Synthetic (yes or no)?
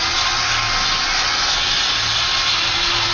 no